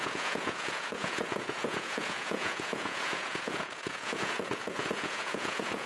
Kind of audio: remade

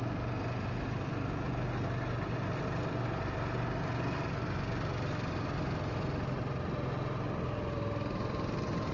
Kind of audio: recorded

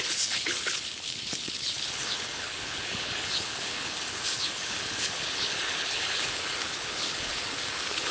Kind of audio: remade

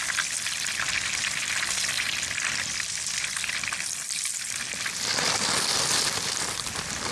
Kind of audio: remade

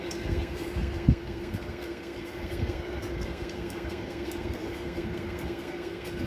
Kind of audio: remade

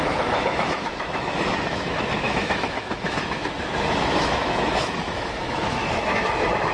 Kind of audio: remade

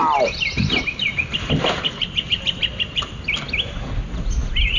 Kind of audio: recorded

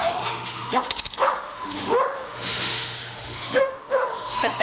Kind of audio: remade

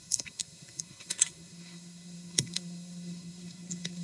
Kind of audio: remade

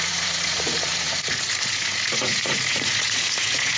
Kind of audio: remade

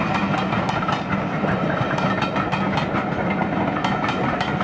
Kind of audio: recorded